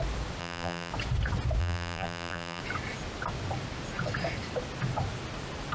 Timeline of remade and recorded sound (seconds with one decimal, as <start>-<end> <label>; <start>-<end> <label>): 0.0-0.4 recorded; 0.4-0.9 remade; 0.9-1.6 recorded; 1.6-2.6 remade; 2.6-5.7 recorded